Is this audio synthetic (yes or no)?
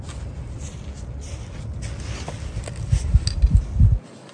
no